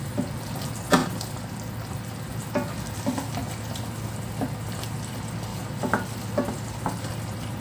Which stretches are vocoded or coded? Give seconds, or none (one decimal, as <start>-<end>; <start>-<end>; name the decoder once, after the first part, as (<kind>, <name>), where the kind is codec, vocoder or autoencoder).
1.0-2.3 (vocoder, BigVGAN v2); 5.5-6.7